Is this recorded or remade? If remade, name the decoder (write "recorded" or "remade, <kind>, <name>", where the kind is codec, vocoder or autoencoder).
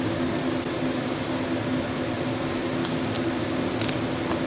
recorded